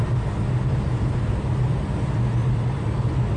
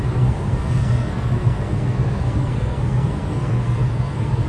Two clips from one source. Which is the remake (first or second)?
second